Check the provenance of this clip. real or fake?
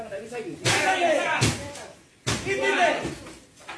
real